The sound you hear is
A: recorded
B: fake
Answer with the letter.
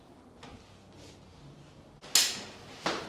A